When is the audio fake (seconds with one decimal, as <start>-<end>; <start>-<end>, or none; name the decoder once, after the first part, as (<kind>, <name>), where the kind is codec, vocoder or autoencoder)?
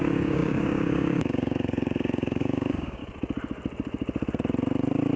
0.0-3.0 (codec, DAC)